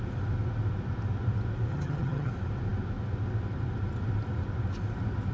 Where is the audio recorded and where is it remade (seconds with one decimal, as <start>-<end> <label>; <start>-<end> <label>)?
0.0-1.7 recorded; 1.7-2.3 remade; 2.3-5.3 recorded